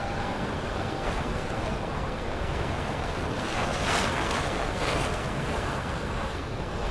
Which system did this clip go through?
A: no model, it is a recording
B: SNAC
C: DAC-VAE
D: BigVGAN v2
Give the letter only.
B